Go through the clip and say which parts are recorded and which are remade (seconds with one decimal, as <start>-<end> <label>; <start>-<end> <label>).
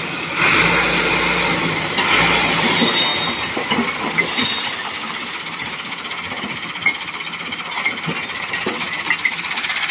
0.0-9.9 recorded